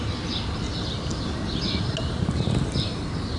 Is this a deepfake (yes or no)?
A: no